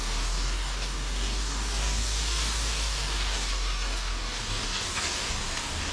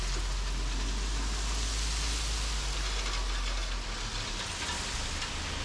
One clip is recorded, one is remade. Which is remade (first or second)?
first